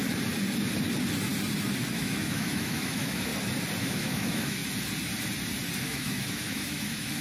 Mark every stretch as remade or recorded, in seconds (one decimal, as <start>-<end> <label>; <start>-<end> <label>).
0.0-1.9 recorded; 1.9-3.3 remade; 3.3-3.8 recorded; 3.8-4.6 remade; 4.6-5.8 recorded; 5.8-7.2 remade